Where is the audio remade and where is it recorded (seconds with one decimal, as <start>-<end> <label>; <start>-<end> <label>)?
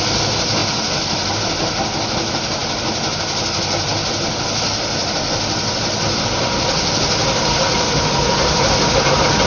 0.0-9.5 recorded